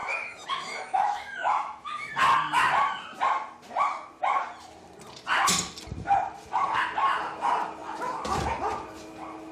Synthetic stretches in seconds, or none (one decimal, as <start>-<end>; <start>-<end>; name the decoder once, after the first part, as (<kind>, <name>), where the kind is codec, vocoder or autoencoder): 0.0-2.1 (autoencoder, DAC-VAE)

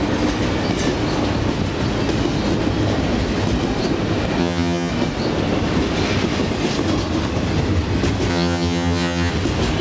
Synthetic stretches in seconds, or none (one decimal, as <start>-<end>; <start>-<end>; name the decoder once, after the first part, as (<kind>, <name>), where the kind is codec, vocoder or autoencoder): 4.4-4.9 (vocoder, HiFi-GAN); 8.3-9.3

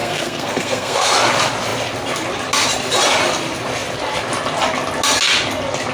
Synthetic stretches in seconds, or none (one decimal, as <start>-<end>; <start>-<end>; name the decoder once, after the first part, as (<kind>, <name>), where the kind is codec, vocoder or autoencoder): 0.0-1.1 (codec, SNAC)

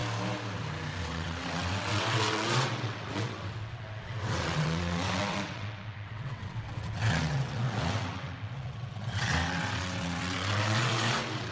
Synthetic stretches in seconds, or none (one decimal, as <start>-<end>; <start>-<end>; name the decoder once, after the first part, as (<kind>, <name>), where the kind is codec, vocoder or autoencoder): 1.0-11.5 (vocoder, WaveNeXt)

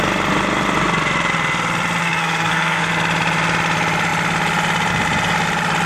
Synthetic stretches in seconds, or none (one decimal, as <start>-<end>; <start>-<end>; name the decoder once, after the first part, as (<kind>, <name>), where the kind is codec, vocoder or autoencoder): 2.0-2.9 (codec, SNAC)

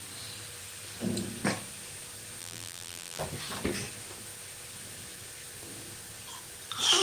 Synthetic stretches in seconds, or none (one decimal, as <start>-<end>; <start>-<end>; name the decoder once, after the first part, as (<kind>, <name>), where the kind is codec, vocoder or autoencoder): 2.4-3.2 (vocoder, BigVGAN v2)

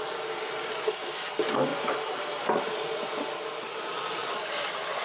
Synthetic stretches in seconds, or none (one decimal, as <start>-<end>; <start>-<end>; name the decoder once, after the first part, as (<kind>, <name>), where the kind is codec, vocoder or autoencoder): none

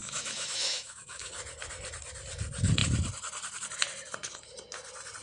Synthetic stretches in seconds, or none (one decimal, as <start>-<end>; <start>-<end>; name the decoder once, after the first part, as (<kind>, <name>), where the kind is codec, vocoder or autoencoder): 0.0-1.3 (autoencoder, DAC-VAE)